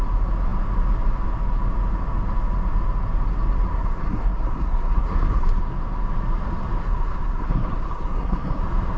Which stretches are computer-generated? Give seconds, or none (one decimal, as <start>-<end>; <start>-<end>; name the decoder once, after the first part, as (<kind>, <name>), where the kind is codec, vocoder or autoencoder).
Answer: 3.7-5.6 (codec, SNAC); 6.8-8.6